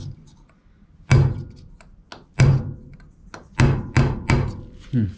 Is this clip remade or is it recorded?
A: recorded